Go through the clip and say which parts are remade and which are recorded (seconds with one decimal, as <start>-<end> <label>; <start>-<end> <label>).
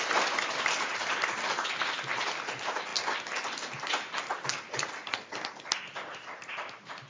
0.0-7.1 recorded